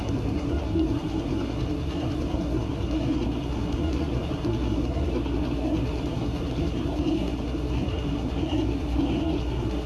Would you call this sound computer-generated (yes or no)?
yes